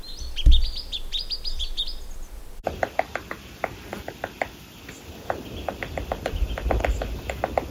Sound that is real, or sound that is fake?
real